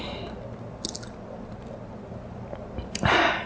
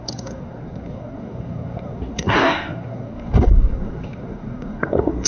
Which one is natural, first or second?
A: first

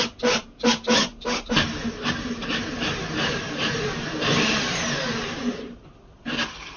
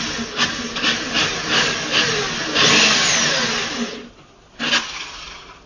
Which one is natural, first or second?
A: second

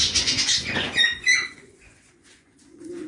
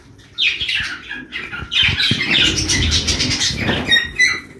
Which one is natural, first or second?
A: second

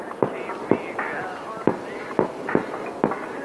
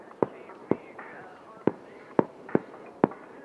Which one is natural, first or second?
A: first